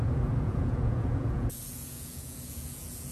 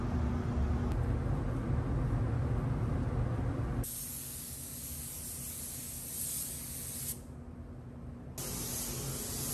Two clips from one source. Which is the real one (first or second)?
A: second